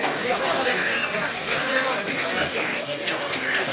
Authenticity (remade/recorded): remade